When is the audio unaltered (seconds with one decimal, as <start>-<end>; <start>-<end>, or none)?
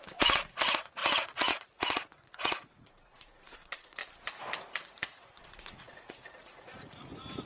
4.0-4.6